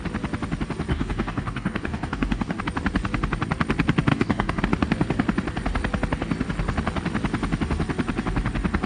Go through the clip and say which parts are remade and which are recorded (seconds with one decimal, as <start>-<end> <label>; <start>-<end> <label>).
0.0-0.9 recorded; 0.9-2.6 remade; 2.6-4.1 recorded; 4.1-4.6 remade; 4.6-8.9 recorded